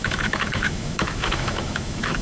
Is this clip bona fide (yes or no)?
no